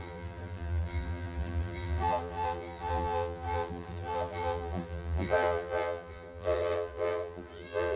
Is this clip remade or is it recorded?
remade